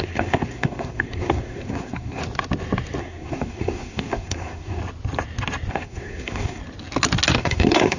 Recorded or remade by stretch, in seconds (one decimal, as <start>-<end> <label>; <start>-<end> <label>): 0.0-2.2 remade; 2.2-3.0 recorded; 3.0-4.8 remade; 4.8-5.7 recorded; 5.7-6.6 remade; 6.6-7.4 recorded; 7.4-8.0 remade